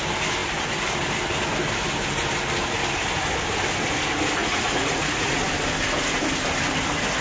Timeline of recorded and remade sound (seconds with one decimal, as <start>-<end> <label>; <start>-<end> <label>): 0.0-4.4 recorded; 4.4-5.4 remade; 5.4-7.2 recorded